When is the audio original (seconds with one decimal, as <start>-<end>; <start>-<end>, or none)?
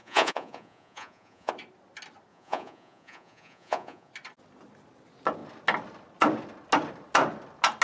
1.5-2.3; 4.1-7.8